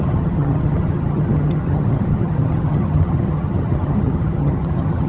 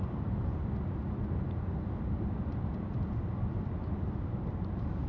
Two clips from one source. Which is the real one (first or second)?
second